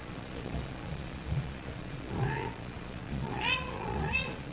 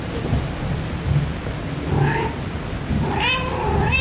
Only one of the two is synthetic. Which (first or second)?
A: first